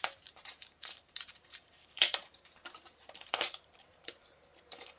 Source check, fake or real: fake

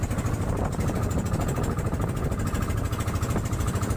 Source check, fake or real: real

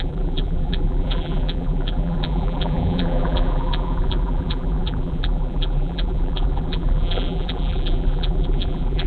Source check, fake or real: fake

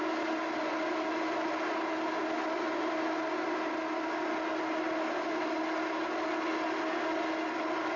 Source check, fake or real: real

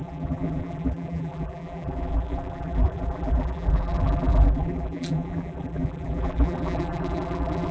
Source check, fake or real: fake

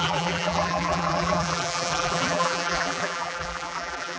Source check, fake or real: fake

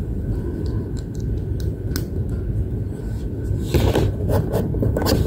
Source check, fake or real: real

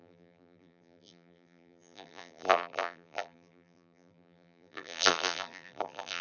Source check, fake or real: fake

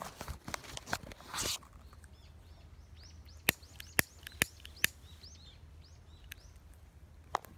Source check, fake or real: real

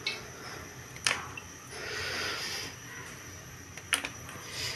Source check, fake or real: real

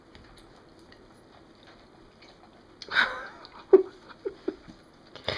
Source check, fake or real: real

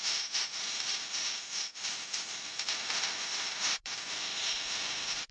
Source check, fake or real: fake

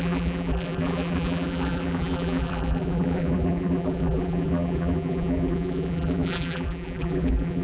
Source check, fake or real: fake